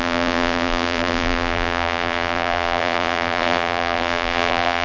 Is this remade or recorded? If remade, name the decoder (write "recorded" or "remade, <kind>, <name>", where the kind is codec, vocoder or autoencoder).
remade, vocoder, BigVGAN v2